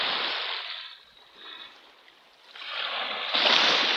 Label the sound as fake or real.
real